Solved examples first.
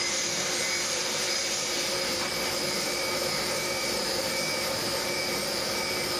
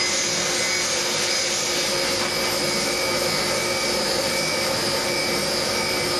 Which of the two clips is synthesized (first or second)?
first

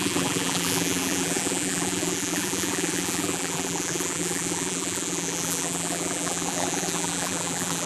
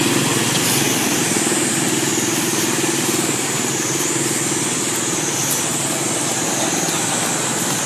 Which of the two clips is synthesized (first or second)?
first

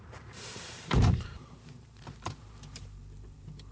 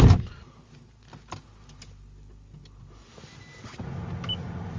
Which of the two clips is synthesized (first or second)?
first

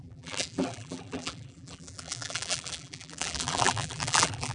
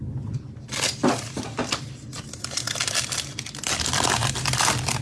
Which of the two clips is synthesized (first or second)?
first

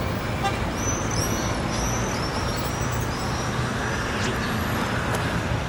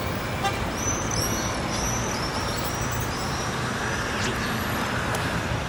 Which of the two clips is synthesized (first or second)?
second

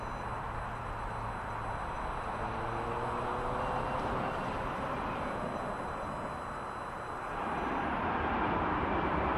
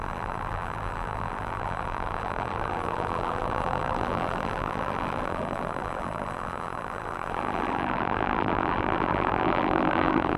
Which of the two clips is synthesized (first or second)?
second